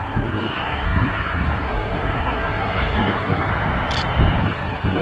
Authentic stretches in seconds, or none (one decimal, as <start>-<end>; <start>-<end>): 3.5-4.4